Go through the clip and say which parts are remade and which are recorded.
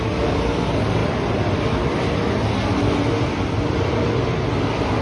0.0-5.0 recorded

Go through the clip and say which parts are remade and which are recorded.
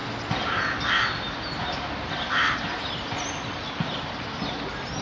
0.0-5.0 recorded